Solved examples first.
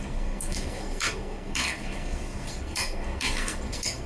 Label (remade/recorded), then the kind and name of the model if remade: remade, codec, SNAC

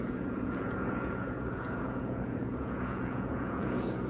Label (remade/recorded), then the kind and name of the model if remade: remade, vocoder, Vocos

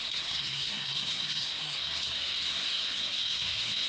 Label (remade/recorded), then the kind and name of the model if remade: remade, codec, SNAC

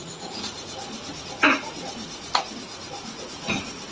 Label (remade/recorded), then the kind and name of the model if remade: remade, vocoder, Vocos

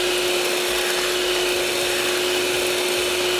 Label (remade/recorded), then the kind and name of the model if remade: recorded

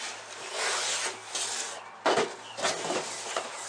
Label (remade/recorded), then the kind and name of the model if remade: recorded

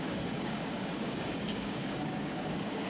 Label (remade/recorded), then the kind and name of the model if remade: remade, codec, DAC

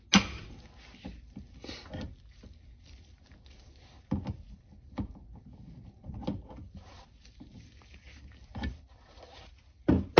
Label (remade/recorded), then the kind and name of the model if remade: recorded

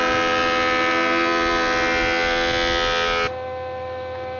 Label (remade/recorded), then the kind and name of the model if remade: recorded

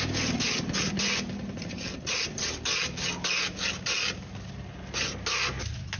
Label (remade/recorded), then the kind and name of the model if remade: recorded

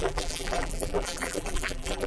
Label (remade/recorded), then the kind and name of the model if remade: remade, vocoder, BigVGAN v2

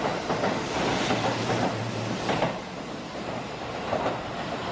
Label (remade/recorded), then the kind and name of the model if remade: remade, vocoder, BigVGAN v2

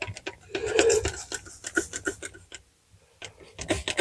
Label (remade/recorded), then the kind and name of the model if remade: recorded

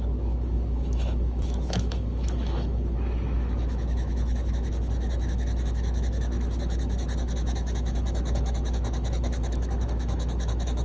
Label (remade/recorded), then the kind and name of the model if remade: remade, autoencoder, DAC-VAE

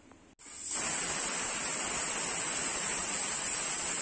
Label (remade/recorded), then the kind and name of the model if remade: recorded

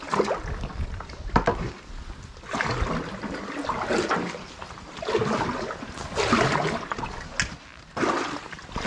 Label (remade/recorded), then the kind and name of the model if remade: recorded